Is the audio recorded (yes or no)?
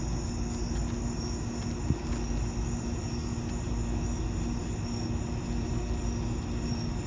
yes